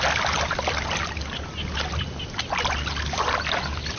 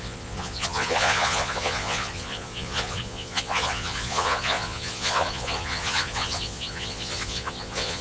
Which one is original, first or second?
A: first